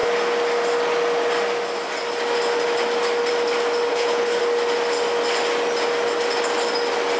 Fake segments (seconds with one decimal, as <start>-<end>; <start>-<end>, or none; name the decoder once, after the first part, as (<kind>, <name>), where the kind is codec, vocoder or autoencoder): 3.9-4.4 (codec, HILCodec)